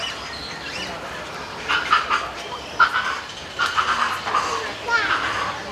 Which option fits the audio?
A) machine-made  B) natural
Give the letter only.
B